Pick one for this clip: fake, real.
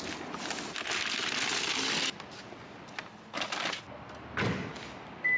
real